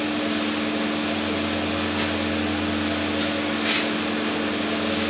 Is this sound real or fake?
real